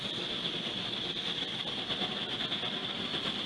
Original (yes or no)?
yes